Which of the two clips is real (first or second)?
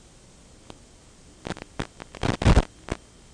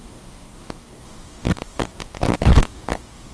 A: first